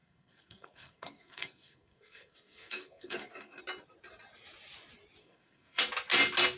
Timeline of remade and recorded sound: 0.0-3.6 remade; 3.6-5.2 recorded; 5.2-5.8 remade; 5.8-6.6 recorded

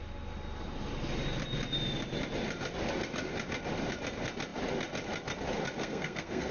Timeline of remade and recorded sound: 0.0-5.8 recorded; 5.8-6.5 remade

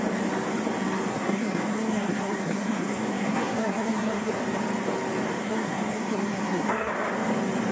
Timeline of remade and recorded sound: 0.0-1.1 recorded; 1.1-4.3 remade; 4.3-5.4 recorded; 5.4-6.9 remade; 6.9-7.7 recorded

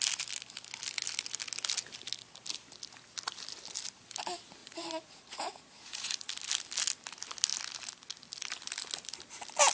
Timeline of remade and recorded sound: 0.0-4.6 recorded; 4.6-6.3 remade; 6.3-9.7 recorded